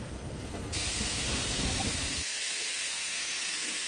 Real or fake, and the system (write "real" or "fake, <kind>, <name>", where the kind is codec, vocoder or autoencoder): fake, codec, SNAC